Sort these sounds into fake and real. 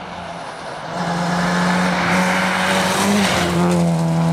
real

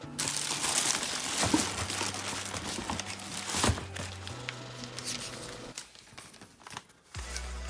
real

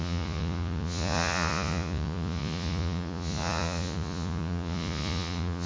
fake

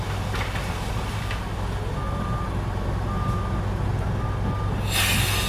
real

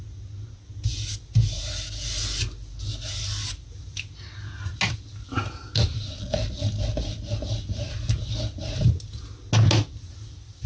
real